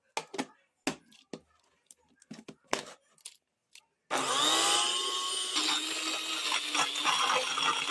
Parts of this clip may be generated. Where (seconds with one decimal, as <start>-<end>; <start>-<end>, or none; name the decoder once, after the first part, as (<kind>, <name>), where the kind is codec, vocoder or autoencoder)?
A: none